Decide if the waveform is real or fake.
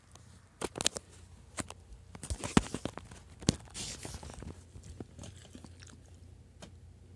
real